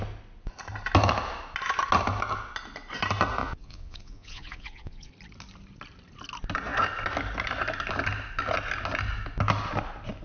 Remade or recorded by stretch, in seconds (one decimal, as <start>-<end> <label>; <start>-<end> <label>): 0.0-3.4 recorded; 3.4-5.1 remade; 5.1-10.2 recorded